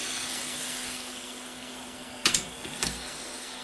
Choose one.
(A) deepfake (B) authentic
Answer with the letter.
A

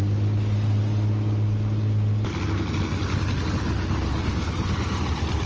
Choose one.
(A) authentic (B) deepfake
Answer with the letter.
A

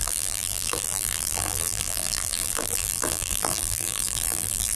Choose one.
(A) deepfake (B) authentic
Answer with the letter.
A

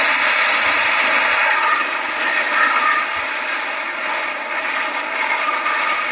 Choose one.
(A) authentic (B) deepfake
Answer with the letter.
A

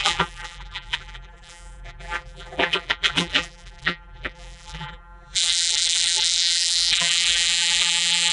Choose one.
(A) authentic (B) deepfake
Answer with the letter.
B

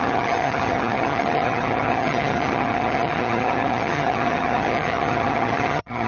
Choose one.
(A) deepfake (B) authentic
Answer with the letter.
A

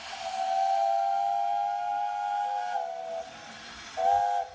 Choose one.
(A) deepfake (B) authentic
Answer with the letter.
B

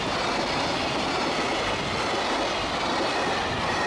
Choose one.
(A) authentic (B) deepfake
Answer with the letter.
A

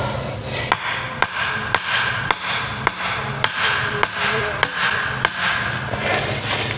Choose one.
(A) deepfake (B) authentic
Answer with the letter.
B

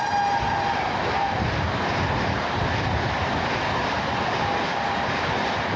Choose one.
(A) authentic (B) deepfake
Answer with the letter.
A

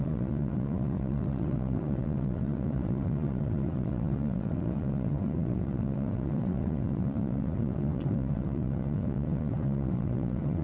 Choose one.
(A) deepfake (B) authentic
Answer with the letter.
A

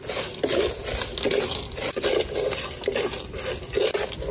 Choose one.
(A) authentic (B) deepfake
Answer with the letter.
A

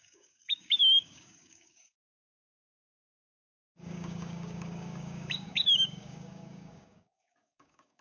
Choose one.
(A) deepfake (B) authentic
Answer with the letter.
A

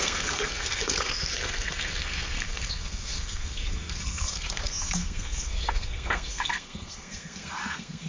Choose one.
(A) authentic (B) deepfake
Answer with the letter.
B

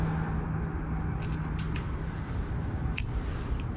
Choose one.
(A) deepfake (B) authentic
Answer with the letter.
B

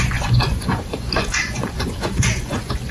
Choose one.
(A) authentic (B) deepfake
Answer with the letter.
B